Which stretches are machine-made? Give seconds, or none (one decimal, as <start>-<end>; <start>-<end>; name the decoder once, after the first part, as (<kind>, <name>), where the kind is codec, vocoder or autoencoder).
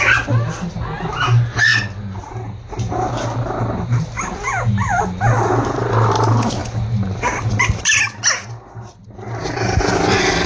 1.7-6.1 (vocoder, BigVGAN v2); 6.6-8.0